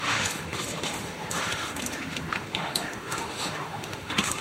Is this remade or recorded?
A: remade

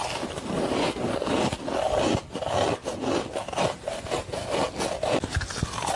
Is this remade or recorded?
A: recorded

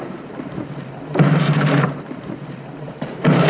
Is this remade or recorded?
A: remade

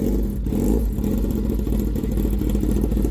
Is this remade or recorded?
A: recorded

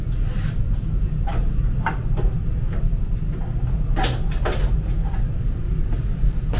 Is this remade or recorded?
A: recorded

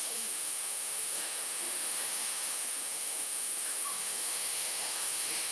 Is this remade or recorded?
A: remade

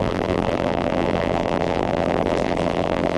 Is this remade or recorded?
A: remade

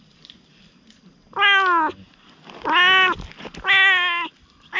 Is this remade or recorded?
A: recorded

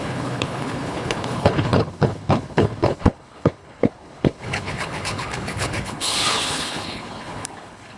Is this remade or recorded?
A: remade